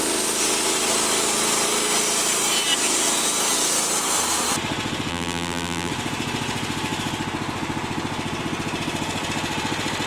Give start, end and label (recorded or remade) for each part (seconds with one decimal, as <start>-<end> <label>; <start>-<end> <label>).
0.0-5.1 recorded; 5.1-5.9 remade; 5.9-10.1 recorded